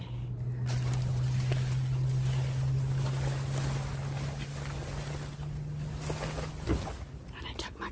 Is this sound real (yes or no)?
yes